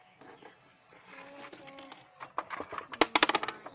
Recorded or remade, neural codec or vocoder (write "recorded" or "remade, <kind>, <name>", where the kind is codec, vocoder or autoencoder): recorded